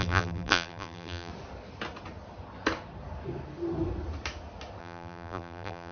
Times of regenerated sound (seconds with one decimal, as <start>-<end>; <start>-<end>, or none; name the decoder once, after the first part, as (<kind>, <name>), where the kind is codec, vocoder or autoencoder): 0.0-1.3 (vocoder, BigVGAN v2); 4.8-5.9